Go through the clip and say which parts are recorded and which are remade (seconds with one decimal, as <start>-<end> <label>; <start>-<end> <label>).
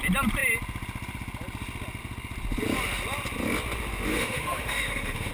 0.0-4.1 recorded; 4.1-5.3 remade